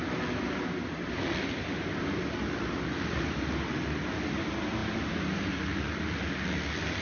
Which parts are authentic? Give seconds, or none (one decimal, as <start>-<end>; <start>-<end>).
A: 0.0-7.0